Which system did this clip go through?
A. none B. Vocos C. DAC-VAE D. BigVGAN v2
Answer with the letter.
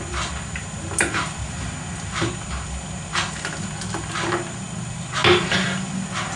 A